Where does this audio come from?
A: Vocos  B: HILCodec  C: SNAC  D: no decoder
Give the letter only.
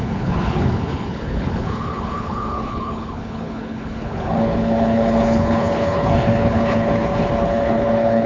B